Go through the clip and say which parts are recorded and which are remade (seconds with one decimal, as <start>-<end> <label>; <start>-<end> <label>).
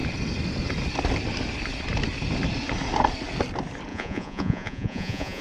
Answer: 0.0-3.9 recorded; 3.9-5.4 remade